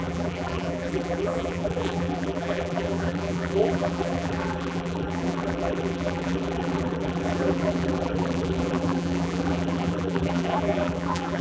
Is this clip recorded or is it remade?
remade